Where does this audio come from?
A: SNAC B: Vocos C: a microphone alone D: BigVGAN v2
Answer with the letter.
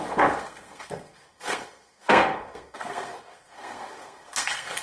A